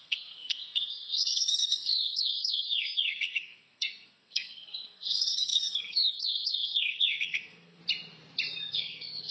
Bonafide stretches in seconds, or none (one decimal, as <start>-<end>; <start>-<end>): 7.8-8.7